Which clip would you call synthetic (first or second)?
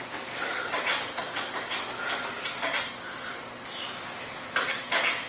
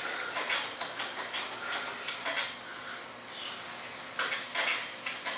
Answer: first